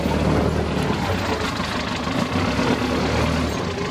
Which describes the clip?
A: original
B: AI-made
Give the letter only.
A